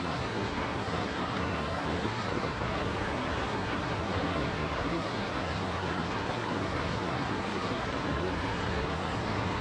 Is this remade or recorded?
remade